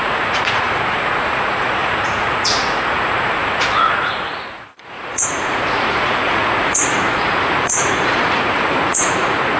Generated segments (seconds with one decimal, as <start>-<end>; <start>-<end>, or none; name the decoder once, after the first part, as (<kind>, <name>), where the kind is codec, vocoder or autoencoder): 0.0-9.6 (vocoder, Vocos)